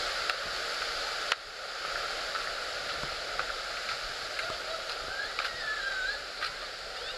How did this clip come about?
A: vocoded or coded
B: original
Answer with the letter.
B